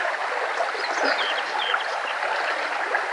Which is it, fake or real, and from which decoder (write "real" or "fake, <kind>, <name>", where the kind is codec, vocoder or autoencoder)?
real